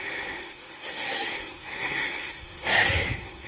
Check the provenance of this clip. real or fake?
fake